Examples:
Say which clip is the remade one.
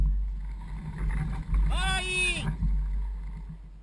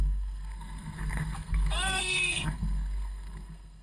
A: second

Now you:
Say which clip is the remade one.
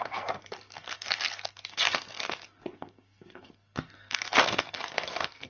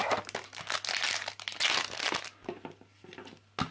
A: first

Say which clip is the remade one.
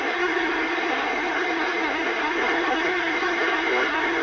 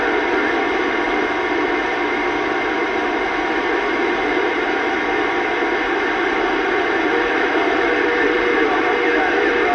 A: first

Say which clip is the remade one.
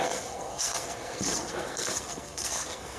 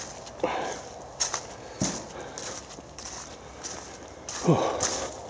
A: first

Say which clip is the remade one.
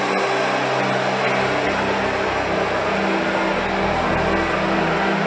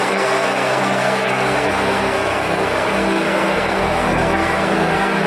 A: second